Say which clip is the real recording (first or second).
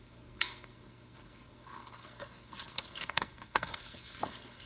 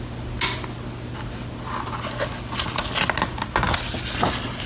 second